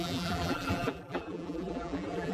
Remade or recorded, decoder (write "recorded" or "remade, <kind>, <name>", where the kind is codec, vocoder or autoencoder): remade, vocoder, BigVGAN v2